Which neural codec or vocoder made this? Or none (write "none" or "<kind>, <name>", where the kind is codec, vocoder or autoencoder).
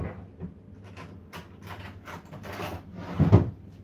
none